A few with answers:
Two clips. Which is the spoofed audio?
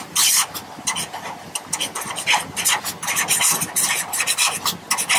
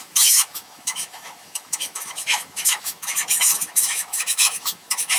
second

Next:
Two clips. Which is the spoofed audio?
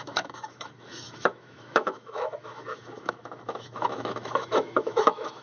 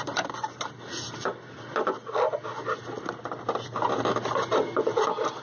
first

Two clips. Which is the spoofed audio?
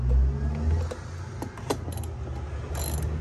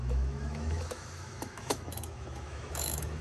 second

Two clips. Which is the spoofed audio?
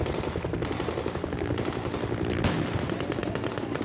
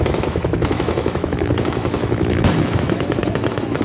second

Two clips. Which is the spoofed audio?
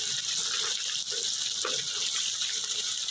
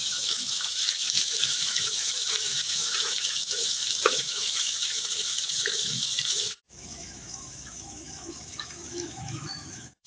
second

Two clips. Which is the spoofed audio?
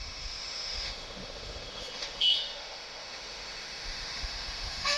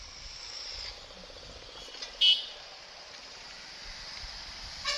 first